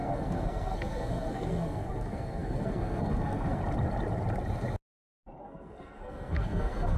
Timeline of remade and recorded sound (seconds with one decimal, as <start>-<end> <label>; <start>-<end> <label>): 0.0-3.6 remade; 3.6-5.4 recorded; 5.4-7.0 remade